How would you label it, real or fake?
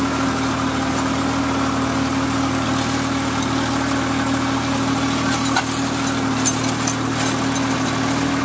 real